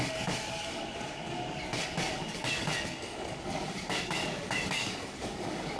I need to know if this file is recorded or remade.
remade